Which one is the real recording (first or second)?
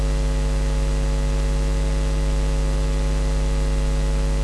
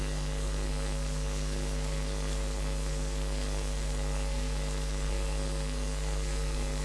first